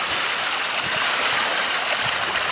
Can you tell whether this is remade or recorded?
recorded